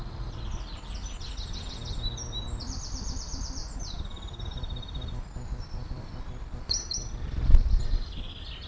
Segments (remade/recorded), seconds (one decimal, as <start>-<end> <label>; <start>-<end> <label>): 0.0-1.0 remade; 1.0-1.7 recorded; 1.7-3.6 remade; 3.6-5.7 recorded; 5.7-8.7 remade